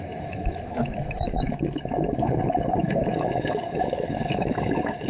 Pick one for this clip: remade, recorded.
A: remade